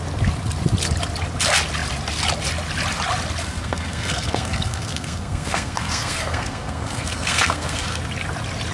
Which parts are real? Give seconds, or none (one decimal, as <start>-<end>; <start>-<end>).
0.0-3.4; 8.0-8.7